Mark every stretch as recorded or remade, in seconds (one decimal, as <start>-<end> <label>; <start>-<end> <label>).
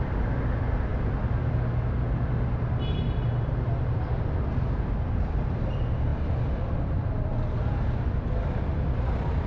0.0-9.5 recorded